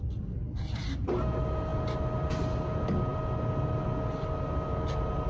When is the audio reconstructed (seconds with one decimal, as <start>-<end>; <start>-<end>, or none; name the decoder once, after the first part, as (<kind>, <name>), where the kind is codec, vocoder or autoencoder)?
none